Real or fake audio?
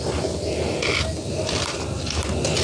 real